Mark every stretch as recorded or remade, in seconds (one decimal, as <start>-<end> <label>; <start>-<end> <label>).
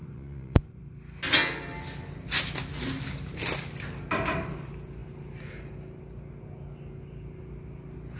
0.0-0.8 remade; 0.8-8.2 recorded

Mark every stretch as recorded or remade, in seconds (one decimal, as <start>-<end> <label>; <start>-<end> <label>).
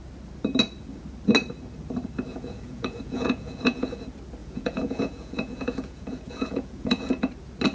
0.0-2.3 recorded; 2.3-4.0 remade; 4.0-4.4 recorded; 4.4-7.3 remade; 7.3-7.7 recorded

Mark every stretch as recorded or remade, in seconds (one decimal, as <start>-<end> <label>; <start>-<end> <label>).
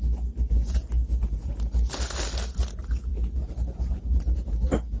0.0-5.0 recorded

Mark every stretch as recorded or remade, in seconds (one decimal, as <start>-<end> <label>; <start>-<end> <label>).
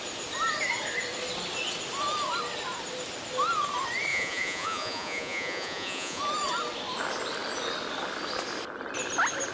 0.0-4.1 recorded; 4.1-6.2 remade; 6.2-9.5 recorded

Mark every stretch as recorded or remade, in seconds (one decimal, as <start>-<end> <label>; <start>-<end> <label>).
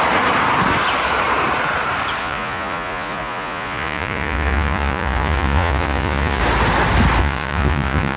0.0-2.2 recorded; 2.2-6.4 remade; 6.4-7.2 recorded; 7.2-8.2 remade